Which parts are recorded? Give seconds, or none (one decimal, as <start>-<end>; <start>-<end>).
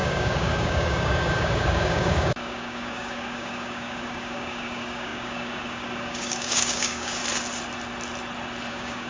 7.2-8.7